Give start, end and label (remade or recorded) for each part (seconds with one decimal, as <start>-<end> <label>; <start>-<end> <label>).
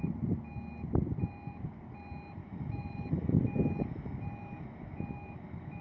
0.0-2.4 recorded; 2.4-5.8 remade